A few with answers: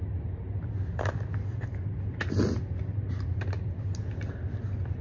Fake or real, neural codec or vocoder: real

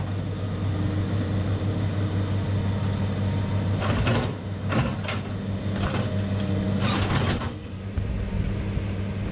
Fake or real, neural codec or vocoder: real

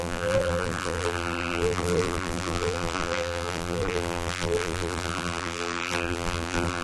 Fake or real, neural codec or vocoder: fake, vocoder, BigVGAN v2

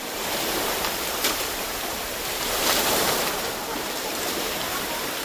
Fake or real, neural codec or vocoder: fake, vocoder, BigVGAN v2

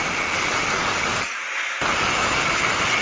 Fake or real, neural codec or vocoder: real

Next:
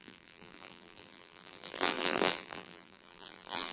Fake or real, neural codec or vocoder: fake, vocoder, BigVGAN v2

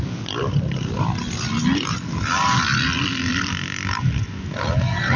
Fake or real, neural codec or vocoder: real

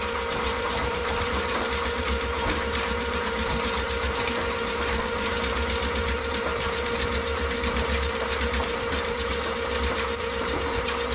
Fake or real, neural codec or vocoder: fake, vocoder, BigVGAN v2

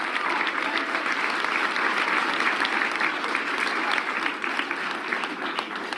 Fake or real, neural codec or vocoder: real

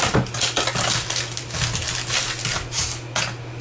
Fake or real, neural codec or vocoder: real